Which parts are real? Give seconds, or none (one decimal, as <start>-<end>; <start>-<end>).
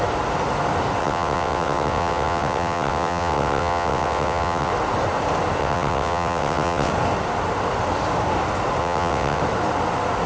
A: 0.0-1.0; 4.7-5.6; 6.9-8.8; 9.4-10.3